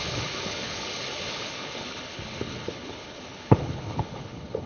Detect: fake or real fake